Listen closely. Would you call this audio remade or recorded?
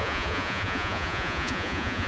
remade